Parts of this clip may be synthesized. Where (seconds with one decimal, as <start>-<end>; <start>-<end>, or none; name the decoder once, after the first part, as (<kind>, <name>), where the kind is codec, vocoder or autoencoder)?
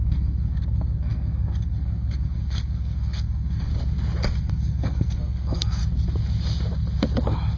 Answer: 0.0-3.7 (codec, SNAC); 4.4-5.8